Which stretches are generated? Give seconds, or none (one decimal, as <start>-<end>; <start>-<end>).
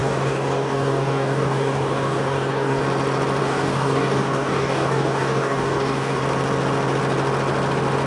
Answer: 0.0-2.8; 3.4-6.2